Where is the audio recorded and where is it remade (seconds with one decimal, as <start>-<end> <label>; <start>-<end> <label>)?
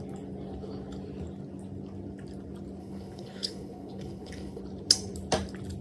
0.0-2.8 recorded; 2.8-4.6 remade; 4.6-5.8 recorded